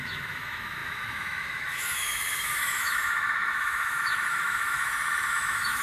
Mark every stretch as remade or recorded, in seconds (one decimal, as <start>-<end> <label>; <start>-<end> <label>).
0.0-5.8 remade